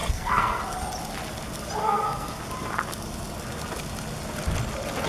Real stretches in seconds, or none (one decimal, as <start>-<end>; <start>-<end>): 0.6-1.8; 2.4-5.1